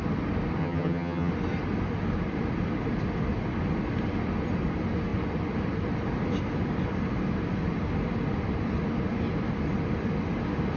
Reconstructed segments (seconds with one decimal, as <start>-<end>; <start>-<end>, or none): 0.6-1.3